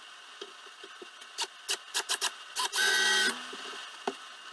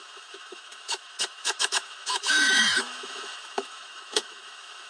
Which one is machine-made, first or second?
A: second